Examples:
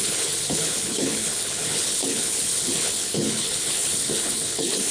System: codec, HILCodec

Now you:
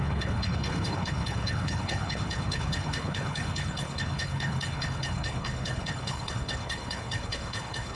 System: codec, HILCodec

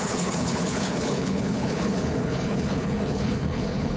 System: codec, HILCodec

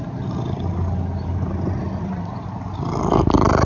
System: none